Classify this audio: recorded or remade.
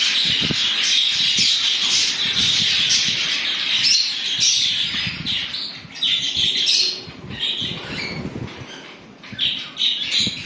recorded